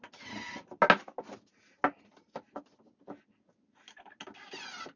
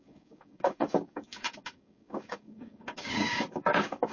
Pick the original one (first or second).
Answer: first